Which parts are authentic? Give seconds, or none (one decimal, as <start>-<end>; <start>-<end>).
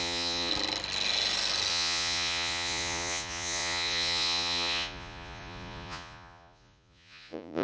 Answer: 0.5-1.7